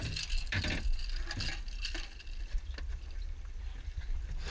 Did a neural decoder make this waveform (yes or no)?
no